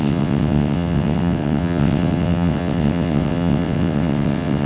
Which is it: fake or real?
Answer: fake